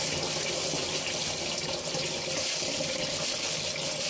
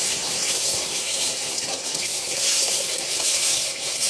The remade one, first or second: second